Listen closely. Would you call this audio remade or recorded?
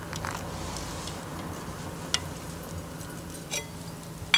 recorded